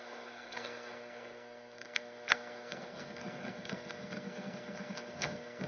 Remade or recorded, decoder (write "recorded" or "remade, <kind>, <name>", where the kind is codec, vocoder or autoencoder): remade, codec, SNAC